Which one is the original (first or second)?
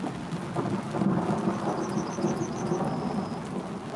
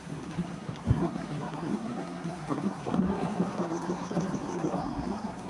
first